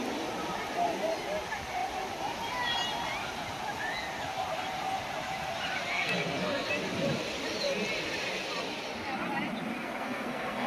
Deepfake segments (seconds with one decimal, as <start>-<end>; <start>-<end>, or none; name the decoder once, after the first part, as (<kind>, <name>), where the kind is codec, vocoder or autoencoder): 5.9-6.7 (codec, SNAC); 9.7-10.7

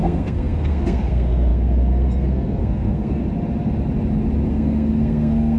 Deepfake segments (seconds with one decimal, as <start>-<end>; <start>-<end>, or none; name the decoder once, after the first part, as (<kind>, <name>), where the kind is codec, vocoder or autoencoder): 0.0-3.2 (codec, SNAC); 4.5-5.6

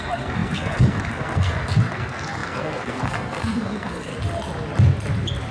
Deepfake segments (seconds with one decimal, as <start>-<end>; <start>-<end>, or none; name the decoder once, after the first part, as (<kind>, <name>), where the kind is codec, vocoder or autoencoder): 0.0-4.1 (codec, SNAC)

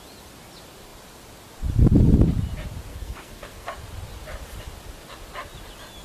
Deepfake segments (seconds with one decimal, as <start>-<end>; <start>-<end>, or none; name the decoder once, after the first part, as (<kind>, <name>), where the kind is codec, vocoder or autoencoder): 2.9-3.7 (codec, SNAC)

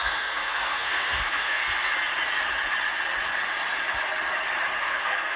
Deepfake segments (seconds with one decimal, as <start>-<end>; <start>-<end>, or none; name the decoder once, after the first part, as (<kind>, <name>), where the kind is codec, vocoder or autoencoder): 0.0-1.6 (codec, SNAC); 4.8-5.4

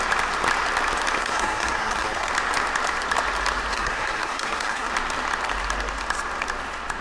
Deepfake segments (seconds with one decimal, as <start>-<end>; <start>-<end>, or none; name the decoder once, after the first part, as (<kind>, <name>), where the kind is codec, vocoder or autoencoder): 1.2-2.3 (codec, SNAC); 3.7-4.9